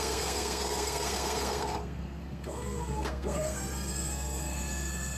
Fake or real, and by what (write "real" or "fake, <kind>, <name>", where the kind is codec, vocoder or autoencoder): fake, codec, SNAC